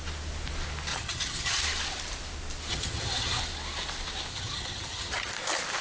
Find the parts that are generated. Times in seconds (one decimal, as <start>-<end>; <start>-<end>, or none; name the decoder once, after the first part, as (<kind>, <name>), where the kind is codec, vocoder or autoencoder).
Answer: 0.9-1.6 (vocoder, HiFi-GAN); 2.7-3.4; 4.3-5.3